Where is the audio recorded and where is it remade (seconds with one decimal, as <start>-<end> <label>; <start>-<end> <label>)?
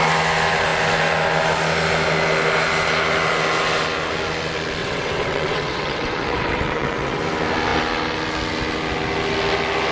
0.0-4.8 recorded; 4.8-7.2 remade; 7.2-9.9 recorded